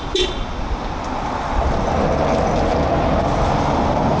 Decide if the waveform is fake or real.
real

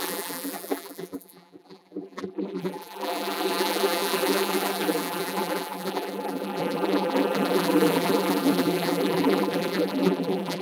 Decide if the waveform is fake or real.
fake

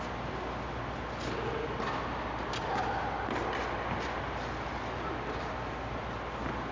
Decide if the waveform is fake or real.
real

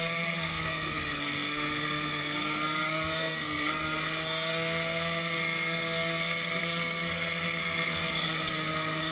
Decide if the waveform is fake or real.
fake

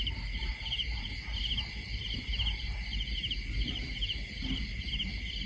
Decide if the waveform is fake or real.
real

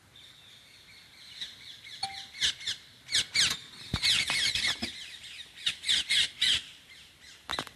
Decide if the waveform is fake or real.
real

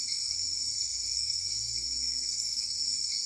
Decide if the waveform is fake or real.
fake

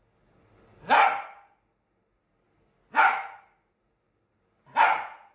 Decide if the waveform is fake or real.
real